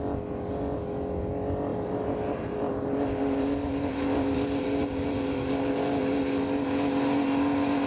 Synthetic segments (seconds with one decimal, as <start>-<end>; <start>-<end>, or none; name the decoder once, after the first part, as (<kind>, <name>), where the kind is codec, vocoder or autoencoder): 1.7-6.4 (vocoder, BigVGAN v2)